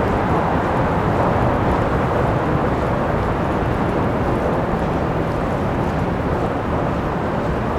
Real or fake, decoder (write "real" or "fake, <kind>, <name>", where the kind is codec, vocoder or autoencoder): real